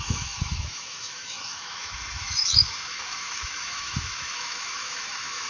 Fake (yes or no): yes